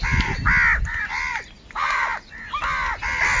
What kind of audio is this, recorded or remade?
recorded